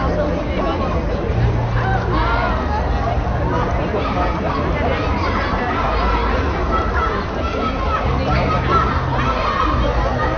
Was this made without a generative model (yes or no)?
yes